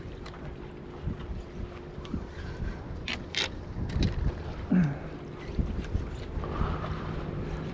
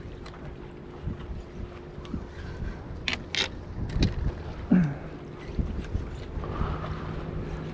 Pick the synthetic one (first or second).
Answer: first